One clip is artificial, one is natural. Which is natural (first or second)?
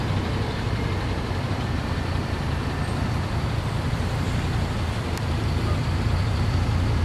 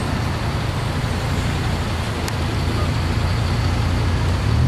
second